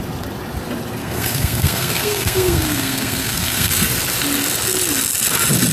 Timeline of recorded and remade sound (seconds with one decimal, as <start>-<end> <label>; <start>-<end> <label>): 0.0-1.0 recorded; 1.0-3.7 remade; 3.7-5.7 recorded